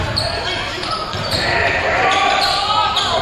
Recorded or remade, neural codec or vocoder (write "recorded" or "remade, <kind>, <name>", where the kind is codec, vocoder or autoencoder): recorded